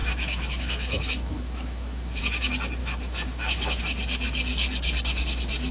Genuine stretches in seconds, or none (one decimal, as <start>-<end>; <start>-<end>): 2.2-2.8; 3.8-5.7